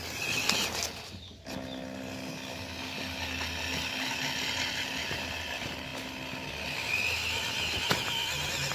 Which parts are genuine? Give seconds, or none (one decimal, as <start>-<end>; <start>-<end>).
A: 0.0-8.7